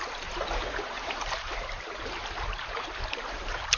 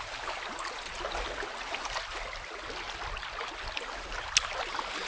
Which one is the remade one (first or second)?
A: first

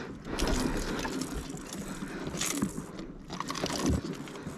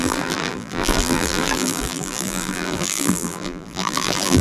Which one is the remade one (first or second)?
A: second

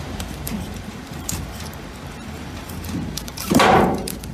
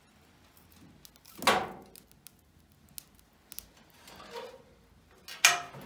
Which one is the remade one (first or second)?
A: first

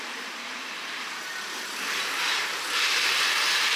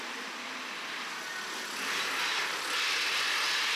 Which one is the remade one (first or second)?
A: first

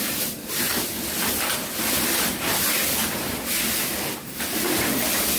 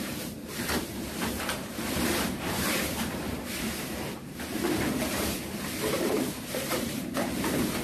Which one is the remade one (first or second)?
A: second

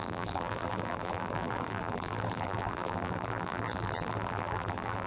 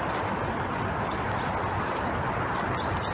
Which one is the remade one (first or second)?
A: first